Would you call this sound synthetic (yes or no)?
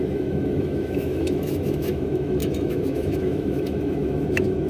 yes